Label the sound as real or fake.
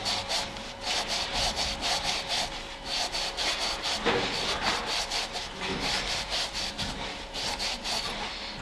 real